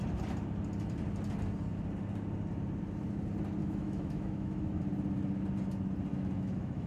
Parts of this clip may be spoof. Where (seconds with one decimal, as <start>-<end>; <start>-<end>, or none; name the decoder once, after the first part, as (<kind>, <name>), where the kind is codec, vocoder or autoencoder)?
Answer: 3.6-4.8 (autoencoder, DAC-VAE); 6.1-6.9